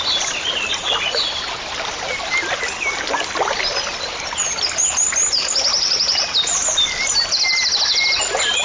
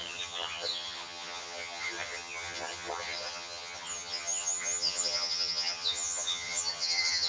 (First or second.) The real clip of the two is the first